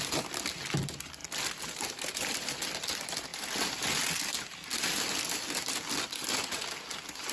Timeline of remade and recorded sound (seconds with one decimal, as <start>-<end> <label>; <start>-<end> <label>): 0.0-7.3 recorded